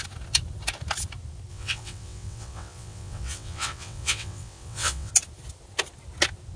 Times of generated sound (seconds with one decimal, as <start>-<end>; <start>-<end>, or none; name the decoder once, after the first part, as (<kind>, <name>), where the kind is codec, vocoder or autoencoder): 1.5-5.1 (vocoder, WaveNeXt)